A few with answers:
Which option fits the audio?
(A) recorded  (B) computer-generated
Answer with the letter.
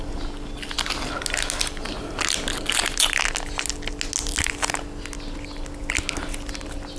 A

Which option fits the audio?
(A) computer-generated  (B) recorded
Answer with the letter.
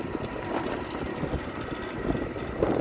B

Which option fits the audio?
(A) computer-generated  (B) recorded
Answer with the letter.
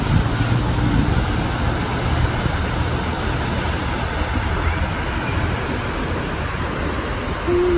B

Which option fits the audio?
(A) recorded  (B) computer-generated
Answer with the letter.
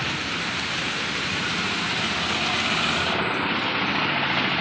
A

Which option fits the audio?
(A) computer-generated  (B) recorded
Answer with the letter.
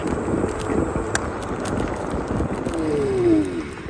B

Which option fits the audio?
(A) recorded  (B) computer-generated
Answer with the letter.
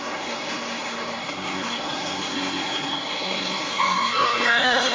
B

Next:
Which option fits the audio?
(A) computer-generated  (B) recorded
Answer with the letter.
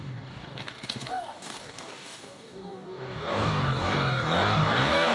A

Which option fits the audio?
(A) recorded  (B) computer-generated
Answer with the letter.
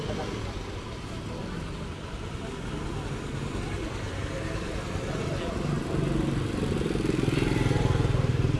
A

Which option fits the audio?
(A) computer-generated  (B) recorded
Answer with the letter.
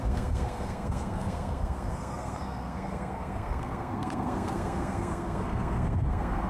A